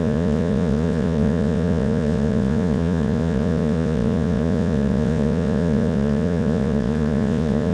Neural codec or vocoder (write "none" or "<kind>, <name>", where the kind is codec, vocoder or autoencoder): vocoder, Vocos